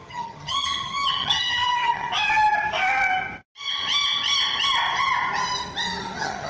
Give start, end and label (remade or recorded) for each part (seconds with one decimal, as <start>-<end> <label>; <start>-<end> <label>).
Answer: 0.0-2.1 remade; 2.1-6.0 recorded; 6.0-6.5 remade